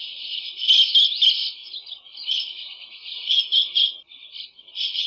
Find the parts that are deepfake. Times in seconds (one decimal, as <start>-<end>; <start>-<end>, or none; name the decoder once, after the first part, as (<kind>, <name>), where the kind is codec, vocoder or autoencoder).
none